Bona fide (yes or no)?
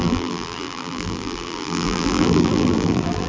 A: no